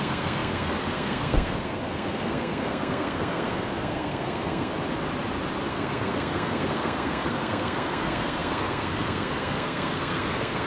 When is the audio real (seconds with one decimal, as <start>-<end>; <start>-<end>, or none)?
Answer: 4.7-5.7